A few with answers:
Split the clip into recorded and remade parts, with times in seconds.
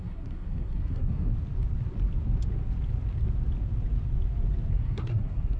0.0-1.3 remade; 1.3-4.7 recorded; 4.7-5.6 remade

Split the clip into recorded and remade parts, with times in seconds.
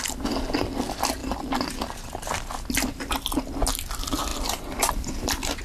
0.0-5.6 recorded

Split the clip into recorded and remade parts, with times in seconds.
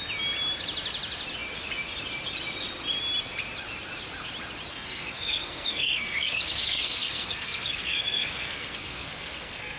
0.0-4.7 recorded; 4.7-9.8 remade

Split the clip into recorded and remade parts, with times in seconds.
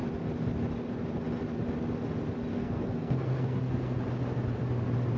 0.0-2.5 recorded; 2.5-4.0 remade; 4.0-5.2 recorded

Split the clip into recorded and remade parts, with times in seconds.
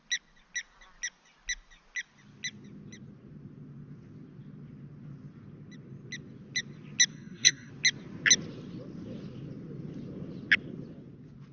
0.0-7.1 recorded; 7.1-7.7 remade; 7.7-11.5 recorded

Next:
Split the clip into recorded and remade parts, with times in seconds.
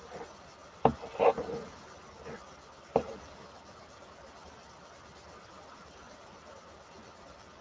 0.0-7.6 recorded